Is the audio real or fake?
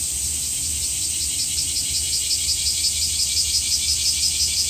real